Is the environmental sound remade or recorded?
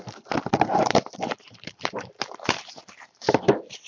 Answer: remade